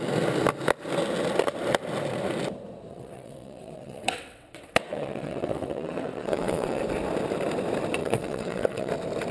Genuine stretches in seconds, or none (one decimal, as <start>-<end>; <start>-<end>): 0.0-2.9; 6.8-8.0; 8.9-9.3